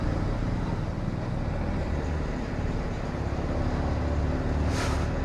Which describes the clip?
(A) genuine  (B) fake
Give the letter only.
A